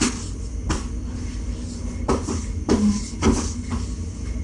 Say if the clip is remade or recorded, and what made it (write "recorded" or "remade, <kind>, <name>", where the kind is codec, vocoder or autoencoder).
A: recorded